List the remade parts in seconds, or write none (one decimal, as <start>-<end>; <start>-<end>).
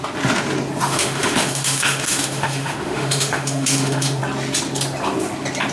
0.8-4.2